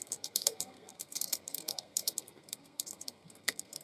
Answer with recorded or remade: remade